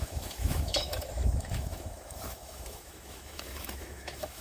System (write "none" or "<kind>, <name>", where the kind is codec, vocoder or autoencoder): autoencoder, DAC-VAE